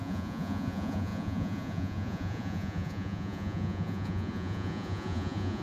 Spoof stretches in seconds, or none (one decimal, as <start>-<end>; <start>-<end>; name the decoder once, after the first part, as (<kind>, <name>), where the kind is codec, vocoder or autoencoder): 0.0-5.6 (vocoder, Vocos)